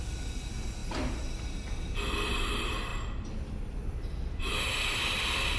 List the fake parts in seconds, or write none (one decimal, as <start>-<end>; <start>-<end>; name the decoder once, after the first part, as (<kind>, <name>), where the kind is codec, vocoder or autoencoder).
2.9-4.4 (vocoder, BigVGAN v2)

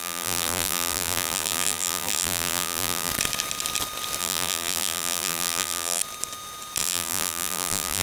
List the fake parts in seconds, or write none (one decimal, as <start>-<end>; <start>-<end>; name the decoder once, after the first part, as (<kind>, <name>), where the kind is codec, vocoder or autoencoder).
0.0-3.1 (vocoder, BigVGAN v2); 4.2-6.0; 6.8-8.0